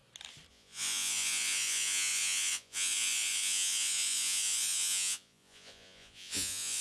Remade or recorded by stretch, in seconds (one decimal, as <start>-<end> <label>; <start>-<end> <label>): 0.0-0.5 recorded; 0.5-6.8 remade